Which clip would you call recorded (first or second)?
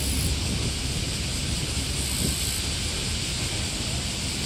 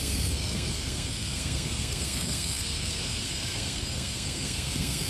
first